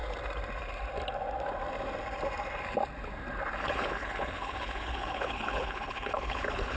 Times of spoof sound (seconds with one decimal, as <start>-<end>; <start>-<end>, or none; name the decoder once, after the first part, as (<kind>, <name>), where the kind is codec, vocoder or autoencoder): 3.6-6.8 (codec, HILCodec)